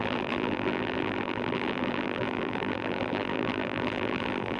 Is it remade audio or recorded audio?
remade